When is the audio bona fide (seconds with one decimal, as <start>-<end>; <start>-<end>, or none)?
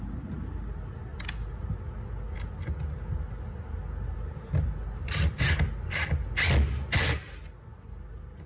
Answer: 0.0-8.5